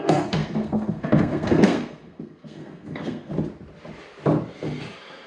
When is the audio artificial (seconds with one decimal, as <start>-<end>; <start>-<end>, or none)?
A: 0.0-3.3